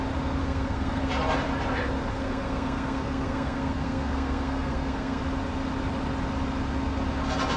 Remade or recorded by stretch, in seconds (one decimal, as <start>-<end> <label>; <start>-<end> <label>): 0.0-0.4 recorded; 0.4-1.1 remade; 1.1-2.1 recorded; 2.1-5.2 remade; 5.2-7.6 recorded

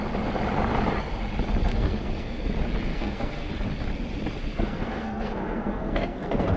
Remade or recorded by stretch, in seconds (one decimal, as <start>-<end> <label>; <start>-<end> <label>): 0.0-1.7 recorded; 1.7-2.5 remade; 2.5-2.9 recorded; 2.9-3.5 remade; 3.5-4.5 recorded; 4.5-6.6 remade

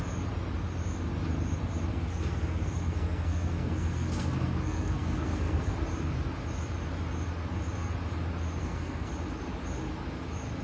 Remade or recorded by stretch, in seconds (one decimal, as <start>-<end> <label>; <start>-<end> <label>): 0.0-1.9 recorded; 1.9-5.7 remade; 5.7-8.6 recorded; 8.6-9.1 remade; 9.1-10.6 recorded

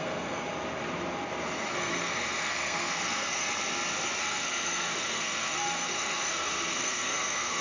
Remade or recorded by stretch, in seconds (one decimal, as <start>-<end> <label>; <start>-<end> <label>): 0.0-0.4 remade; 0.4-1.7 recorded; 1.7-3.4 remade; 3.4-4.2 recorded; 4.2-7.6 remade

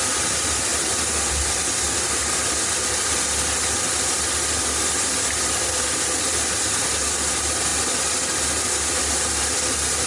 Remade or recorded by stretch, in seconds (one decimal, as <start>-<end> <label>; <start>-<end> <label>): 0.0-10.1 recorded

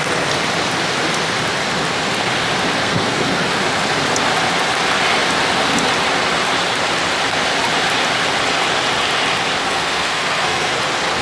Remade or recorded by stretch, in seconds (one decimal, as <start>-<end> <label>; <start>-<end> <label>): 0.0-2.8 recorded; 2.8-3.5 remade; 3.5-9.6 recorded; 9.6-10.7 remade; 10.7-11.2 recorded

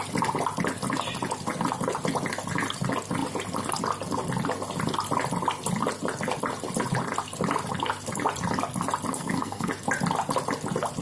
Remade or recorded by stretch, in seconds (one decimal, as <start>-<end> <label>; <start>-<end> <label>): 0.0-9.1 recorded; 9.1-9.7 remade; 9.7-11.0 recorded

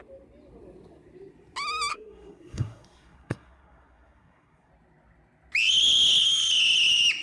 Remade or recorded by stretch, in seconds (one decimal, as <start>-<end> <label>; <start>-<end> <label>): 0.0-1.9 recorded; 1.9-4.7 remade; 4.7-7.2 recorded